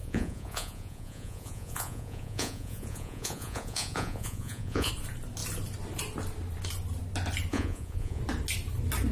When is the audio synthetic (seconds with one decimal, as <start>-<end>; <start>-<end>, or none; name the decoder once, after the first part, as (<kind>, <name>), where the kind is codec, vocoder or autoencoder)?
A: 0.0-4.9 (vocoder, Vocos); 7.5-8.2